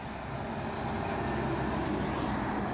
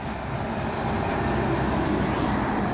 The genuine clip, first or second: first